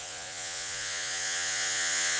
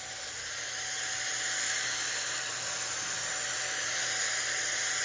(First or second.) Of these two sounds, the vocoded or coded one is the first